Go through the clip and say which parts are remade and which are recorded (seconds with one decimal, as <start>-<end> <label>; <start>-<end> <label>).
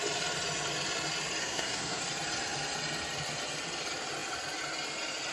0.0-1.4 recorded; 1.4-2.0 remade; 2.0-5.3 recorded